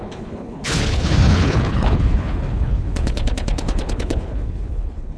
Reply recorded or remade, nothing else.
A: remade